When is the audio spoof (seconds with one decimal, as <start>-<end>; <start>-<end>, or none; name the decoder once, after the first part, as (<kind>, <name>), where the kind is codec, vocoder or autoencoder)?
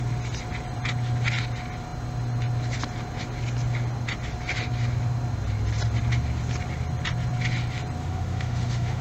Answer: 8.0-9.0 (autoencoder, DAC-VAE)